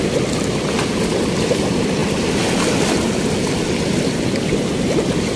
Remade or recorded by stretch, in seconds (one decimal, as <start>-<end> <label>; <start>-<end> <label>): 0.0-5.4 recorded